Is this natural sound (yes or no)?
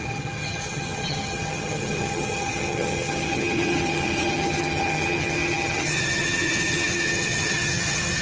no